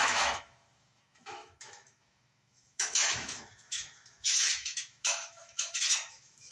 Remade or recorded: remade